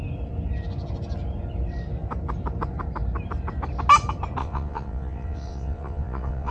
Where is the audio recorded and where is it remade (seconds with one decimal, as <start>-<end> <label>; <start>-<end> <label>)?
0.0-4.4 recorded; 4.4-6.5 remade